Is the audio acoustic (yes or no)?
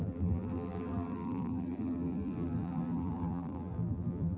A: no